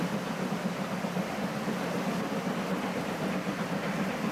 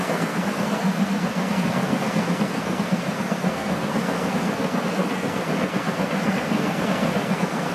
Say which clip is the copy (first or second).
second